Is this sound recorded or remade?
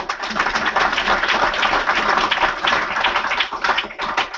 recorded